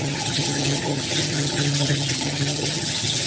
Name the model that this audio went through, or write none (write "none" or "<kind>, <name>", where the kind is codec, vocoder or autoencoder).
vocoder, HiFi-GAN